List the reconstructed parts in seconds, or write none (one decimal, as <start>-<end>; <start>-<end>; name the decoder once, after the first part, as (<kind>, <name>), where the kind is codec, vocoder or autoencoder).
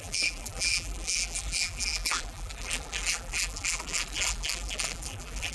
0.0-5.5 (vocoder, BigVGAN v2)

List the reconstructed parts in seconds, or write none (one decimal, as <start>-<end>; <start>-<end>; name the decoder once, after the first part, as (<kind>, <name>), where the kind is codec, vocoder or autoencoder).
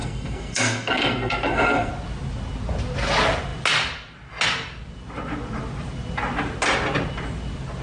0.0-1.9 (codec, SNAC)